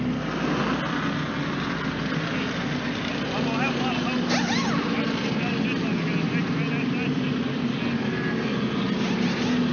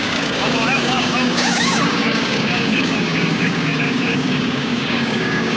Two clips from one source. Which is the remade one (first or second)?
second